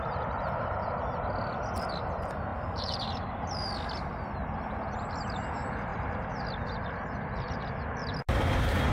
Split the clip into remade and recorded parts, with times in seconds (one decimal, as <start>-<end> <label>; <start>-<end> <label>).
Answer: 0.0-2.5 recorded; 2.5-3.7 remade; 3.7-8.9 recorded